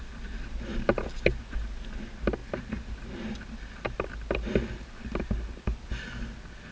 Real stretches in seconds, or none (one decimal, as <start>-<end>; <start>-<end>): 0.0-6.7